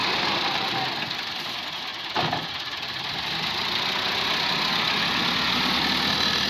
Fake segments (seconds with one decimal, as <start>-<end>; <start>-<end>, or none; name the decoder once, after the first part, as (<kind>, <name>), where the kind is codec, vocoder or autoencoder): 0.0-1.0 (vocoder, BigVGAN v2)